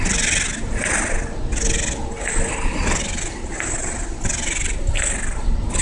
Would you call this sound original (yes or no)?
yes